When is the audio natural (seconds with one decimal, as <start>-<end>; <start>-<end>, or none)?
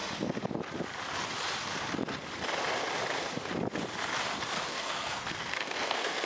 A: 0.0-4.7